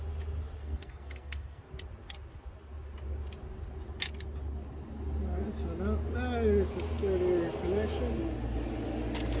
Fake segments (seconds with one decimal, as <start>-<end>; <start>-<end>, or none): 0.6-1.7